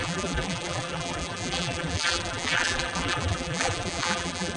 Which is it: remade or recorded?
remade